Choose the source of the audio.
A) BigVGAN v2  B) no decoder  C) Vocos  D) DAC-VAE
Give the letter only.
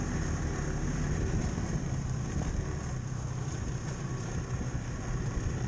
A